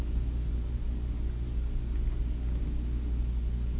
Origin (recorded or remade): recorded